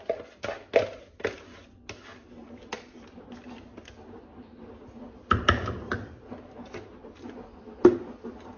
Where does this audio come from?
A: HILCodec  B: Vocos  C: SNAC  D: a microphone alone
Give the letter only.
D